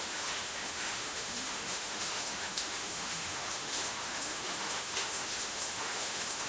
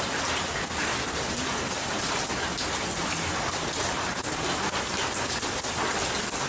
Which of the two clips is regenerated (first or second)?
first